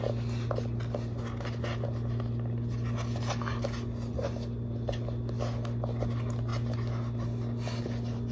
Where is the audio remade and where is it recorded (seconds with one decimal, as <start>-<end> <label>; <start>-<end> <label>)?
0.0-8.3 recorded